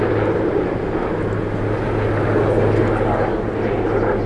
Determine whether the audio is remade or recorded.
recorded